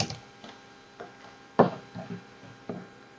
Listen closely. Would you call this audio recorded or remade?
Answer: recorded